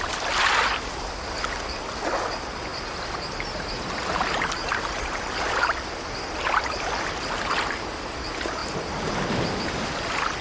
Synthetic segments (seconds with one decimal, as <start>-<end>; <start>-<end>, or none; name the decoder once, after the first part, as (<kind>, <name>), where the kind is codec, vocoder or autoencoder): 4.6-5.2 (vocoder, BigVGAN v2)